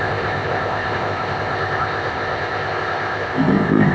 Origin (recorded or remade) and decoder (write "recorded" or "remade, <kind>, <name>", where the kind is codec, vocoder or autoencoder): remade, codec, ZipCodec